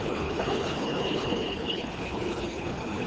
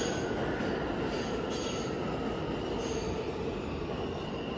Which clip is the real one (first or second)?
second